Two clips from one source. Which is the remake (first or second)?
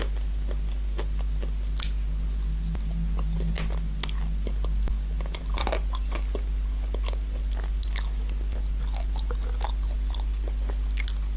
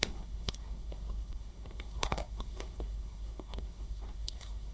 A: second